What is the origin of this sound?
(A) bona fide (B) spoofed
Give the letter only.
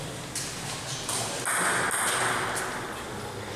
A